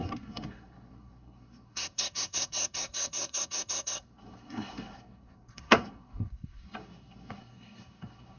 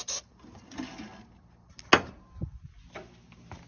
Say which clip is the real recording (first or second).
second